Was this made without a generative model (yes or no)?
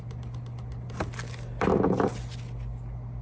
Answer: yes